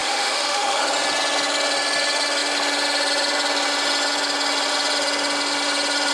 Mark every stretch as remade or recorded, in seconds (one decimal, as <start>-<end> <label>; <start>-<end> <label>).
0.0-0.8 remade; 0.8-6.1 recorded